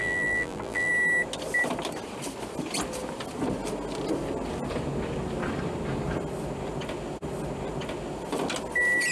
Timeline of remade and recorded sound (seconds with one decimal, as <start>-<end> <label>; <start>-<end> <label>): 0.0-0.9 remade; 0.9-9.1 recorded